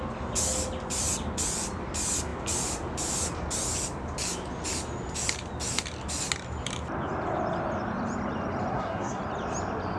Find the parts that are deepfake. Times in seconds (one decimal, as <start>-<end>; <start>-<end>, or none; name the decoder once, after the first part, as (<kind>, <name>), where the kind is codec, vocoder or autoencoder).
8.7-9.2 (codec, SNAC)